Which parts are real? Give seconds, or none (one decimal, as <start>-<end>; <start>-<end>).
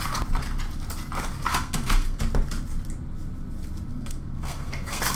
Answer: 0.0-1.5; 2.2-3.9